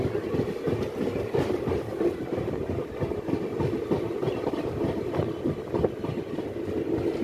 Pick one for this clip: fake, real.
real